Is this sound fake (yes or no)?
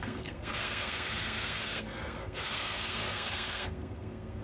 yes